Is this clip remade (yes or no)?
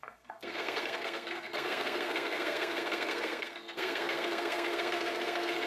yes